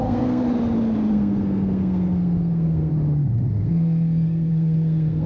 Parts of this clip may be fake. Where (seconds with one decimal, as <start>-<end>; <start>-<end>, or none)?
0.0-0.4; 1.1-2.9; 3.5-5.3